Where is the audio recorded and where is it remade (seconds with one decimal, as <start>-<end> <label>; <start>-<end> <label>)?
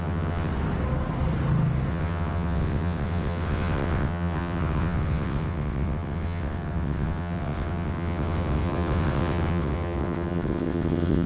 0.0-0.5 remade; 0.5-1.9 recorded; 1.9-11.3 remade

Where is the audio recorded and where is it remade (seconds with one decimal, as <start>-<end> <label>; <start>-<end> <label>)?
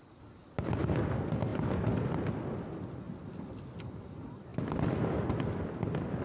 0.0-6.2 recorded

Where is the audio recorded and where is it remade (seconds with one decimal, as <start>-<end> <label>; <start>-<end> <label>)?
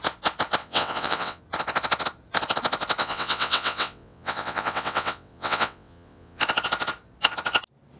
0.0-0.6 recorded; 0.6-1.4 remade; 1.4-3.0 recorded; 3.0-6.4 remade; 6.4-8.0 recorded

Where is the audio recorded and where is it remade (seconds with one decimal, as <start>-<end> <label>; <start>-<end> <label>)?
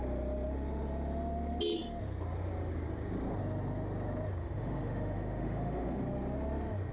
0.0-4.4 recorded; 4.4-6.0 remade; 6.0-6.9 recorded